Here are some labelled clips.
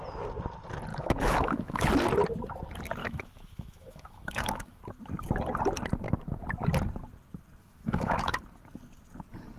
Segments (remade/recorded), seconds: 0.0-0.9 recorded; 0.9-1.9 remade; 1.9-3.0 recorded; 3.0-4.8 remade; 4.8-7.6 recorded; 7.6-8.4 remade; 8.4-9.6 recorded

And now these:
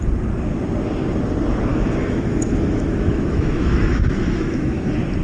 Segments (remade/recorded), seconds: 0.0-1.7 recorded; 1.7-4.8 remade; 4.8-5.2 recorded

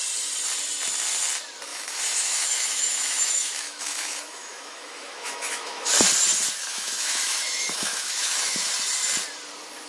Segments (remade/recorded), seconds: 0.0-1.7 recorded; 1.7-5.9 remade; 5.9-6.7 recorded; 6.7-8.7 remade; 8.7-9.9 recorded

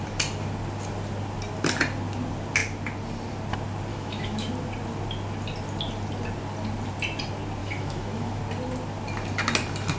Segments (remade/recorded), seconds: 0.0-3.9 recorded; 3.9-4.5 remade; 4.5-7.6 recorded; 7.6-8.4 remade; 8.4-10.0 recorded

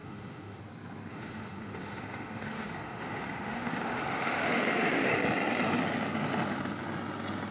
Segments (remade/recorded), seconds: 0.0-0.6 remade; 0.6-1.1 recorded; 1.1-5.1 remade; 5.1-7.5 recorded

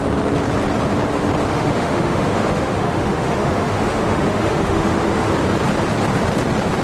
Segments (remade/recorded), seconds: 0.0-1.5 recorded; 1.5-5.3 remade; 5.3-6.8 recorded